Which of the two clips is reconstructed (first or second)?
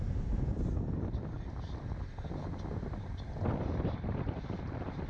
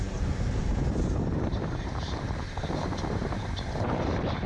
second